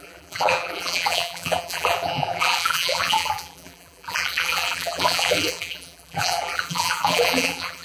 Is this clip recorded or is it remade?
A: remade